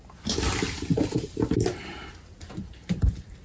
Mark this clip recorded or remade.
recorded